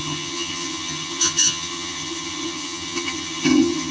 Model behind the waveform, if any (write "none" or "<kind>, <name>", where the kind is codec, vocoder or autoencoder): vocoder, HiFi-GAN